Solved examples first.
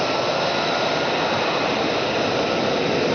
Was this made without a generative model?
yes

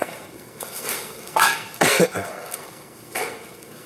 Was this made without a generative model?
no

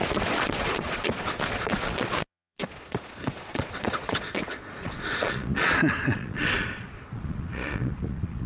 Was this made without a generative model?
no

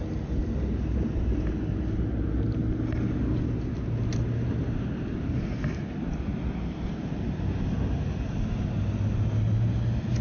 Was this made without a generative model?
yes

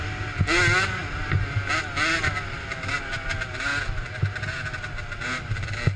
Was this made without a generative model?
yes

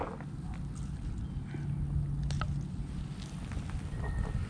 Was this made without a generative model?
yes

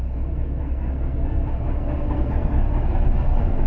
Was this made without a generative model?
no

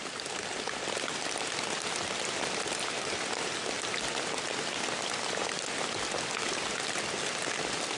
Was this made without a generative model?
yes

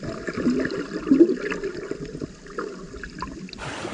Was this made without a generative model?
yes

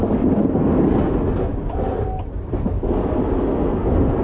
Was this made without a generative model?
yes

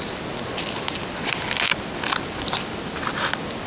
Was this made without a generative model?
yes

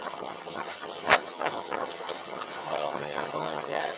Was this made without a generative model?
no